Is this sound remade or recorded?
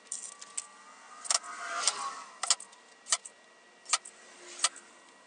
recorded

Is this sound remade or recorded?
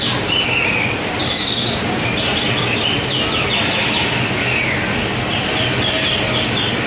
recorded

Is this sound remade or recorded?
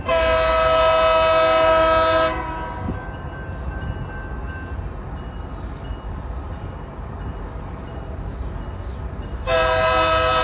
recorded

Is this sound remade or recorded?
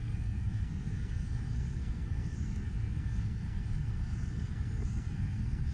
remade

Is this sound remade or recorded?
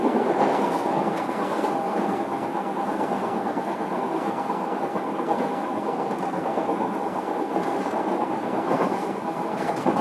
remade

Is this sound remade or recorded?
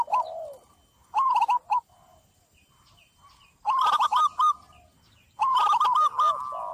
recorded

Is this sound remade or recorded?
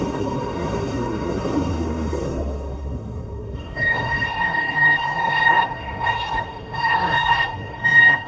remade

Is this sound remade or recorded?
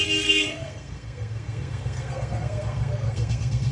remade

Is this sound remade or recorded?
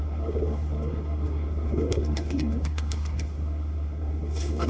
remade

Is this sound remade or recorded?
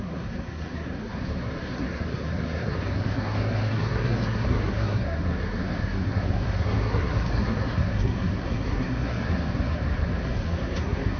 remade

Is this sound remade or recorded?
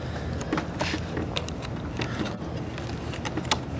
recorded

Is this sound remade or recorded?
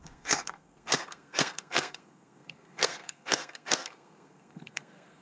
remade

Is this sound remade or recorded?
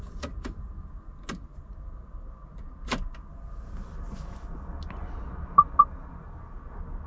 recorded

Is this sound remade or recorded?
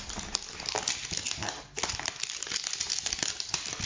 recorded